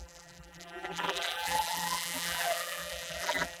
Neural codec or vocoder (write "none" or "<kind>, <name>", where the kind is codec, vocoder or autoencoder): vocoder, BigVGAN v2